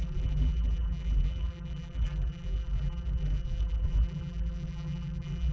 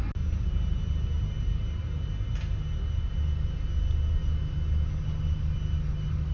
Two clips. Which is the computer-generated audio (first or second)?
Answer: first